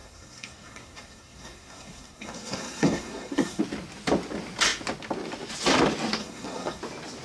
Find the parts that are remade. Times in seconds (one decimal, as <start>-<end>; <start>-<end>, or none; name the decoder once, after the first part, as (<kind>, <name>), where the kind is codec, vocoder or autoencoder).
0.0-3.6 (codec, SNAC); 6.2-6.8